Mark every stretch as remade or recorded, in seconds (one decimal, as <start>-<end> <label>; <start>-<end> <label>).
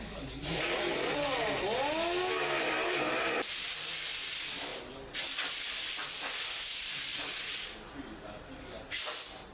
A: 0.0-7.1 recorded; 7.1-7.7 remade; 7.7-9.5 recorded